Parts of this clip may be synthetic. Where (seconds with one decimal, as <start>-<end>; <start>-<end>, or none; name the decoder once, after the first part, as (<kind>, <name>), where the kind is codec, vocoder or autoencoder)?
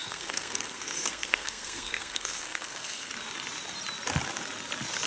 0.0-3.1 (codec, SNAC)